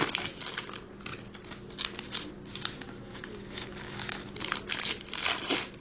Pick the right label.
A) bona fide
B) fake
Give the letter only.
A